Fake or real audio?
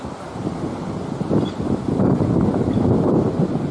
fake